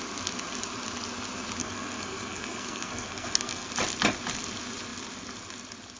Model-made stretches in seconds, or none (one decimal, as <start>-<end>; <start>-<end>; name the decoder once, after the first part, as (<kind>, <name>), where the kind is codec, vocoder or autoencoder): 1.6-3.7 (codec, SNAC)